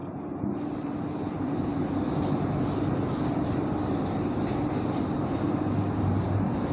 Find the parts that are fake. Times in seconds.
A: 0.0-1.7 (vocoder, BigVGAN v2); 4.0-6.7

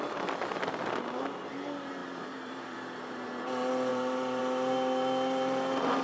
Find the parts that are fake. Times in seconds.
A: 2.0-2.8 (vocoder, BigVGAN v2); 3.9-4.4

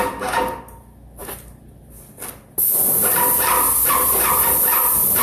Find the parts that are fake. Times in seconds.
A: none

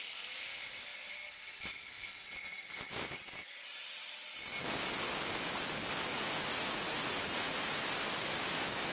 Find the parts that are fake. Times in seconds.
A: 6.1-7.7 (vocoder, Vocos)

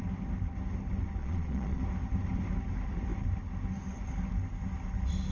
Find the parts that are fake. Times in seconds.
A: 1.2-1.8 (vocoder, Vocos)